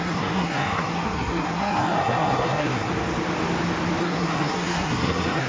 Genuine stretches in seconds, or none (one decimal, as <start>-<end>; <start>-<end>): 2.9-4.0